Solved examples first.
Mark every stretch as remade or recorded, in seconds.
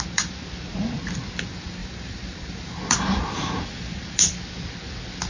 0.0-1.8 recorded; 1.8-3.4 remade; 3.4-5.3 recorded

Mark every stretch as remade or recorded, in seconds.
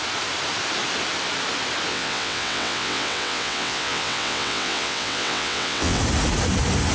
0.0-1.9 recorded; 1.9-6.0 remade; 6.0-6.9 recorded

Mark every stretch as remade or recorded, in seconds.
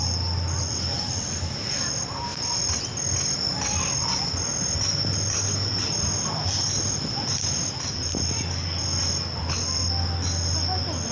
0.0-11.1 recorded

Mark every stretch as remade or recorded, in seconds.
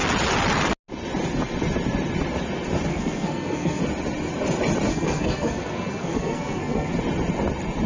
0.0-2.9 recorded; 2.9-3.8 remade; 3.8-4.9 recorded; 4.9-6.9 remade; 6.9-7.9 recorded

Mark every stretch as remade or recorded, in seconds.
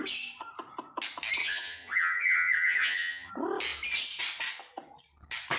0.0-1.4 recorded; 1.4-3.3 remade; 3.3-5.6 recorded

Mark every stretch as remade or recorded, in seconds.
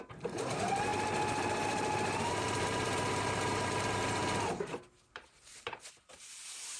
0.0-0.9 remade; 0.9-2.3 recorded; 2.3-4.2 remade; 4.2-4.9 recorded; 4.9-6.8 remade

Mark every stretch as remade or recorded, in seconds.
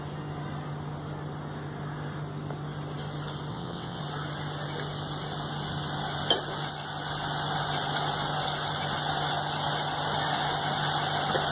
0.0-3.5 recorded; 3.5-4.0 remade; 4.0-11.5 recorded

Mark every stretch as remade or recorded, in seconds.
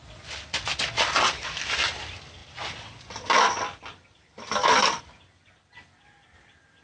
0.0-2.4 recorded; 2.4-5.0 remade; 5.0-6.8 recorded